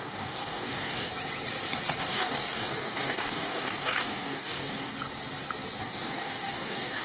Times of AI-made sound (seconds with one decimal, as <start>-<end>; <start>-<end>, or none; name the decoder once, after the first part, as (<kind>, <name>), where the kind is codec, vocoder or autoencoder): 0.0-1.1 (codec, DAC); 2.0-4.9; 5.8-7.0